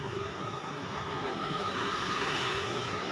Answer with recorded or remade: remade